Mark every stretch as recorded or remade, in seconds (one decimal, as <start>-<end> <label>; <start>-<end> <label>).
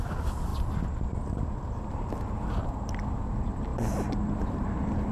0.0-0.5 remade; 0.5-1.1 recorded; 1.1-3.7 remade; 3.7-4.3 recorded; 4.3-5.1 remade